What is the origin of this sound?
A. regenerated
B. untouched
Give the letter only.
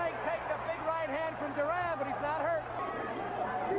B